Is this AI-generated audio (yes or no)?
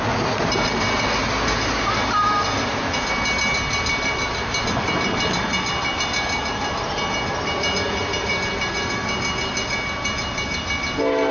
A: no